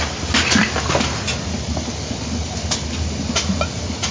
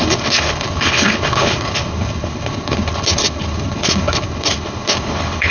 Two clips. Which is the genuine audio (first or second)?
first